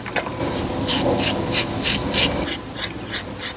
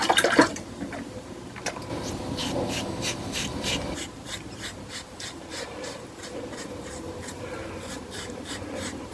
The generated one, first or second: second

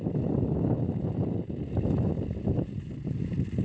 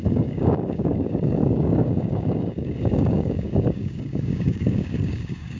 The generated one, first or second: second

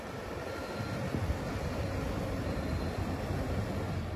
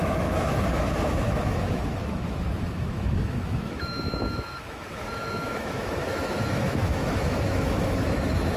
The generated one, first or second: second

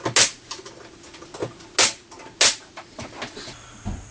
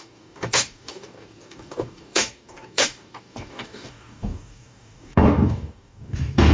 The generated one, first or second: second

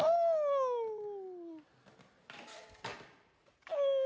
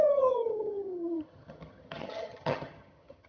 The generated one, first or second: second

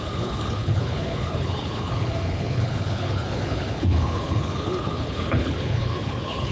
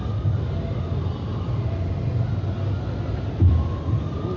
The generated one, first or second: first